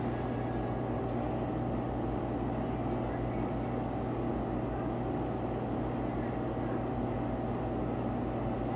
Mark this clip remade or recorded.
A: recorded